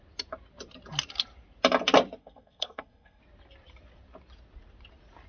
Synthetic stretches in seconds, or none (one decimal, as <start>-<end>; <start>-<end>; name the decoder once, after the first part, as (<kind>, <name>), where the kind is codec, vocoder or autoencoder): 2.2-3.2 (codec, SNAC)